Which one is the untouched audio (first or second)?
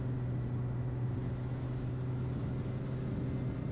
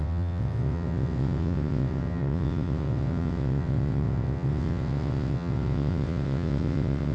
first